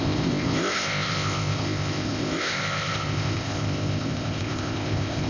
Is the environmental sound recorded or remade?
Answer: remade